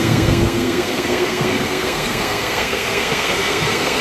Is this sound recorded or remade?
remade